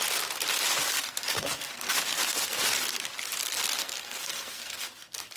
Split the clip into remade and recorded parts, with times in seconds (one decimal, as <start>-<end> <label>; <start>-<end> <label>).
0.0-1.0 recorded; 1.0-2.6 remade; 2.6-3.8 recorded; 3.8-5.4 remade